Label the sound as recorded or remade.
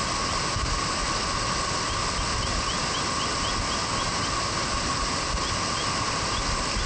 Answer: recorded